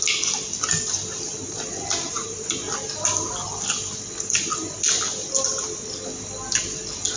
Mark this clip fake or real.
real